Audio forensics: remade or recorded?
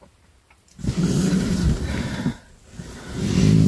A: recorded